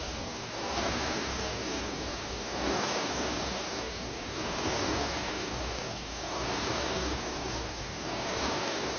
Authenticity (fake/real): fake